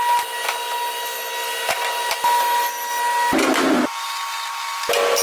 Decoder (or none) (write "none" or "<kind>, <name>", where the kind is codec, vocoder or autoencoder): none